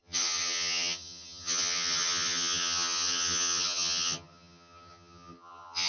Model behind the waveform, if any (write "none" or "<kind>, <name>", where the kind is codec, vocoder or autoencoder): vocoder, HiFi-GAN